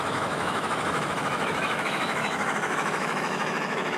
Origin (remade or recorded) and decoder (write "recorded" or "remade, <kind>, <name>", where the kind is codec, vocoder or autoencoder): remade, autoencoder, DAC-VAE